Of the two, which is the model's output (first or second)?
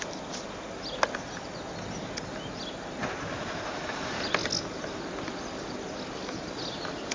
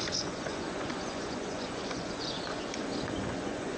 second